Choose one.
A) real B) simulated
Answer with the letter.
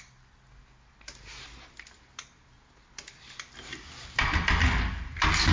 A